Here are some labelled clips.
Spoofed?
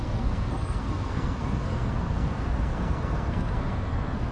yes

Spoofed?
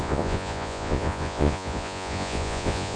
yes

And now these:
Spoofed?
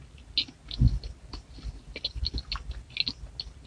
no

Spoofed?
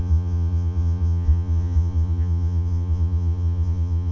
yes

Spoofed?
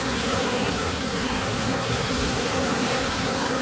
yes